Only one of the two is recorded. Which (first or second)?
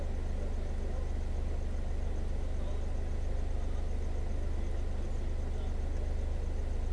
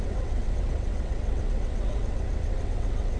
first